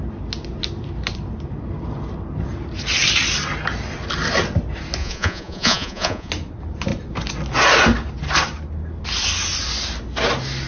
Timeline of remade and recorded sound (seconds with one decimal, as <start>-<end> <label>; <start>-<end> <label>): 0.0-5.0 recorded; 5.0-6.3 remade; 6.3-10.7 recorded